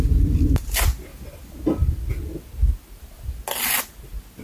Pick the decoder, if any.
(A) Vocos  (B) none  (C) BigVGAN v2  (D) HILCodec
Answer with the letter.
B